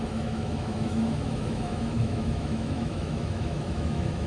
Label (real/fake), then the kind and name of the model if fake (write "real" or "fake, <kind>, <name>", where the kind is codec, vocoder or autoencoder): fake, autoencoder, DAC-VAE